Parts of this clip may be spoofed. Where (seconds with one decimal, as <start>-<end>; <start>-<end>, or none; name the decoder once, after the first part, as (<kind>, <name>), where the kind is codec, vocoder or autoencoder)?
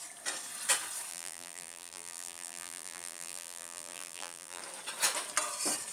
1.1-4.6 (vocoder, BigVGAN v2)